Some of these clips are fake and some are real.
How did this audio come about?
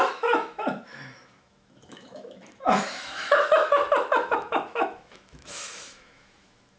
fake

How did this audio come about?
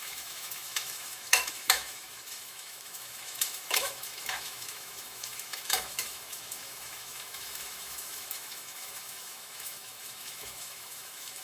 fake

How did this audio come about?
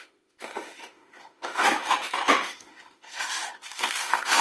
fake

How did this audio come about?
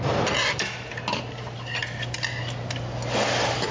real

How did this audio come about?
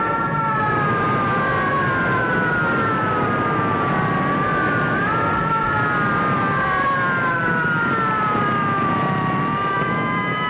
real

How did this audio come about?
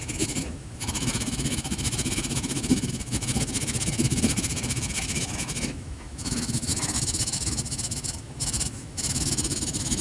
fake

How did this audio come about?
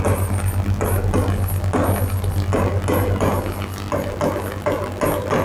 real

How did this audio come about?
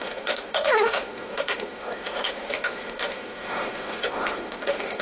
fake